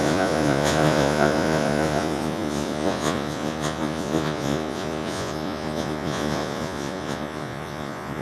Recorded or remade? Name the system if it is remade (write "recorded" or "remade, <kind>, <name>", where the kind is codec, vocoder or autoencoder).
remade, vocoder, Vocos